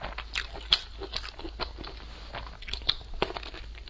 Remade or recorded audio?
recorded